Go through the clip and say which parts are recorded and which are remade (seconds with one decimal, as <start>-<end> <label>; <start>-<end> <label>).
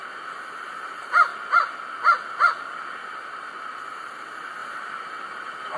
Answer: 0.0-1.3 remade; 1.3-2.9 recorded; 2.9-5.8 remade